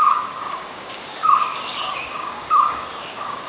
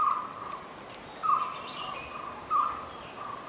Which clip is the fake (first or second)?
first